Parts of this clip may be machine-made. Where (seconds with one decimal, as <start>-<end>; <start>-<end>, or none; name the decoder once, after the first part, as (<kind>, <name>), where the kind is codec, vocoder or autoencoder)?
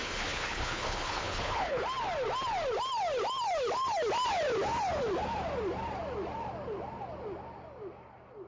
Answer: 0.0-1.8 (codec, HILCodec)